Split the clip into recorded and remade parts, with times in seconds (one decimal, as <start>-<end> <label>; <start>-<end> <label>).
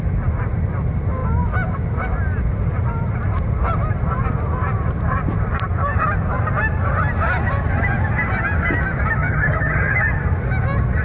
0.0-9.2 recorded; 9.2-9.9 remade; 9.9-11.0 recorded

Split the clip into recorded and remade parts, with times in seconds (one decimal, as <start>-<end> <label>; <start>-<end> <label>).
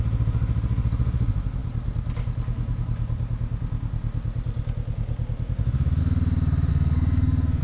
0.0-6.7 recorded; 6.7-7.6 remade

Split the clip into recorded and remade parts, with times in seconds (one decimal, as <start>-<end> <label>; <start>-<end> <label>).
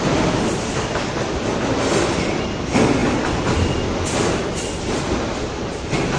0.0-6.2 recorded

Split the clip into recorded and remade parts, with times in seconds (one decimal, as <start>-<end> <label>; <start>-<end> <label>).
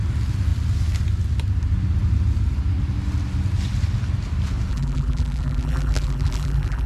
0.0-4.7 recorded; 4.7-6.9 remade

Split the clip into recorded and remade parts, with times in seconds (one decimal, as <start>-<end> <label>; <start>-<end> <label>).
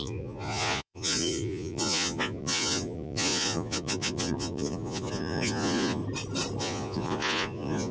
0.0-6.0 remade; 6.0-6.6 recorded; 6.6-7.9 remade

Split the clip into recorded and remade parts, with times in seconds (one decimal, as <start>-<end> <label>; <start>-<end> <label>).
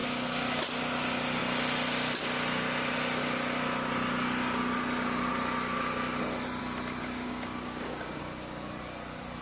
0.0-0.6 remade; 0.6-7.0 recorded; 7.0-8.2 remade; 8.2-9.4 recorded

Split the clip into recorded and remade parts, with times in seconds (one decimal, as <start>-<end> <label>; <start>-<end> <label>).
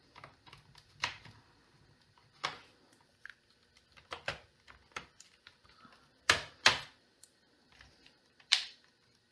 0.0-2.2 remade; 2.2-7.0 recorded; 7.0-9.3 remade